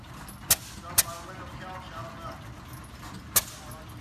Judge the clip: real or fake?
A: real